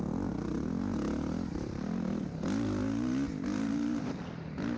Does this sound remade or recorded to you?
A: recorded